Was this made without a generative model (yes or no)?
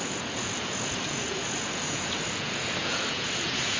no